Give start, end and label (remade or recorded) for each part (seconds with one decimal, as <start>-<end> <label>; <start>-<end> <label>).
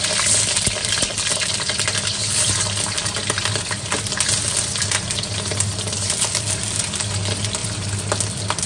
0.0-8.7 recorded